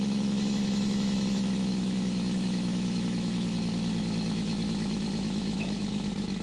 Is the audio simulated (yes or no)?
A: yes